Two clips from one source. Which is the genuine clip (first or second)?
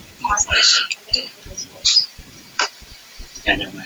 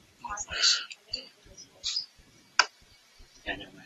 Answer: second